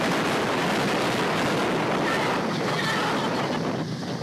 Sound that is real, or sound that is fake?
real